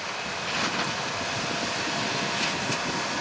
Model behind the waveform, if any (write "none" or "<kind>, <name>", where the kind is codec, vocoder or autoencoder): none